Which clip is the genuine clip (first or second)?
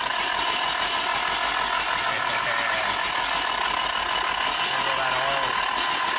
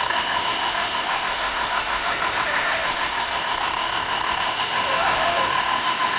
first